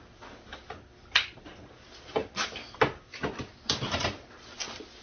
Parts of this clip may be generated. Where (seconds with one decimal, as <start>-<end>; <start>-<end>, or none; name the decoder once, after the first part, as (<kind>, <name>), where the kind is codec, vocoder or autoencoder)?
none